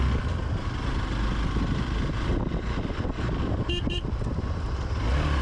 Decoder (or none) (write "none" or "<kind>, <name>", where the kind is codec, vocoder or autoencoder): none